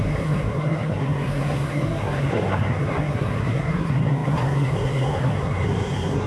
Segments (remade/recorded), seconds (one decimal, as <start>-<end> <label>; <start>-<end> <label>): 0.0-6.3 remade